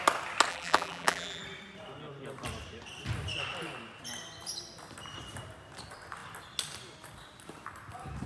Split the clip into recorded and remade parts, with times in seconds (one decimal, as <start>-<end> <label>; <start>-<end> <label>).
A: 0.0-0.5 recorded; 0.5-1.4 remade; 1.4-8.3 recorded